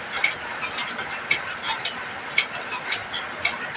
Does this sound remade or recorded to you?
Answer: recorded